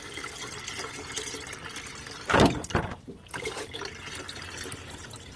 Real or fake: real